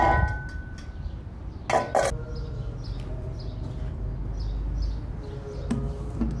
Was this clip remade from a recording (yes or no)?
no